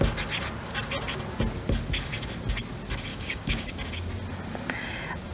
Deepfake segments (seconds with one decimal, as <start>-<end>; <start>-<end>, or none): 3.1-3.7